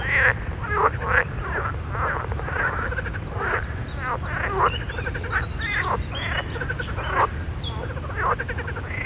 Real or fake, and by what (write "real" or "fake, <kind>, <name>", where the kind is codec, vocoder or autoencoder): real